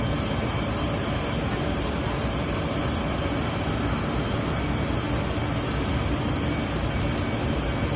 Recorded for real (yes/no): yes